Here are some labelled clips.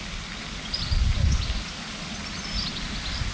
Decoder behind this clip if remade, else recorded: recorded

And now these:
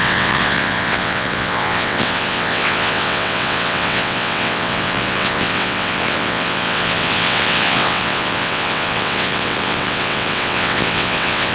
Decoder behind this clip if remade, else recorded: remade, vocoder, WaveNeXt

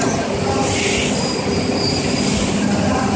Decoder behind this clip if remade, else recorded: recorded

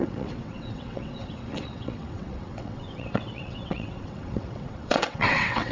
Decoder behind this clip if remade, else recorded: remade, vocoder, WaveNeXt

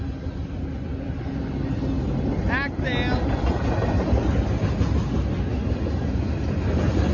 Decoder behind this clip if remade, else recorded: recorded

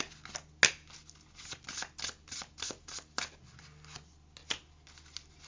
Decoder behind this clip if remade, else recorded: recorded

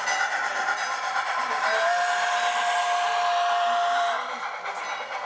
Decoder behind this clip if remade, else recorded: recorded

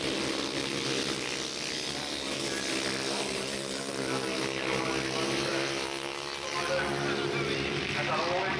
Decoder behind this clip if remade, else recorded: recorded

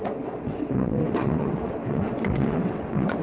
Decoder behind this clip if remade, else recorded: remade, vocoder, WaveNeXt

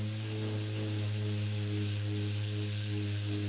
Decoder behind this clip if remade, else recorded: recorded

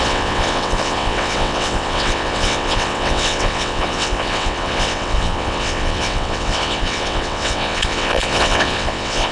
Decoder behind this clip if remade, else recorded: remade, vocoder, WaveNeXt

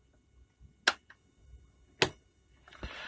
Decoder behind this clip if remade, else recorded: recorded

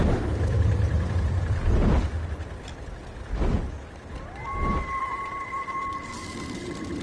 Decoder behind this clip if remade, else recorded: recorded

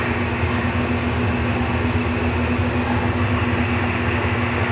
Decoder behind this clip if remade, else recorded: recorded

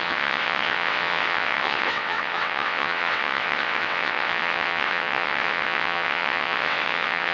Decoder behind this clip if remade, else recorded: remade, vocoder, WaveNeXt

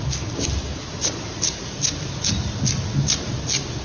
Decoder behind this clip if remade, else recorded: recorded